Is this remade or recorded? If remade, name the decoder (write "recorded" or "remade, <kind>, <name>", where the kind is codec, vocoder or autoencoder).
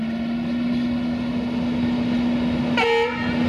recorded